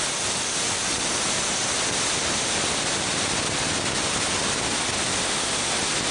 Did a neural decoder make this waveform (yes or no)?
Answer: no